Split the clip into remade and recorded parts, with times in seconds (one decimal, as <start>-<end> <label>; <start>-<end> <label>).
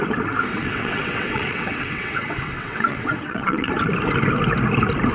0.0-0.6 recorded; 0.6-3.7 remade; 3.7-5.1 recorded